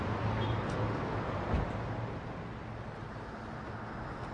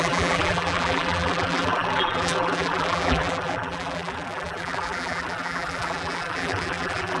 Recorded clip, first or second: first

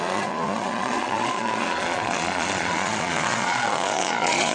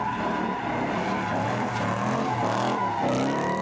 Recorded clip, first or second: second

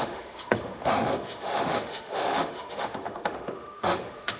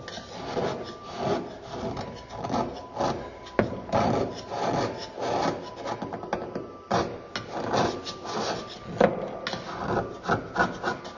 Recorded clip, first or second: second